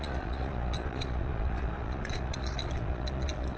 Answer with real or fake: fake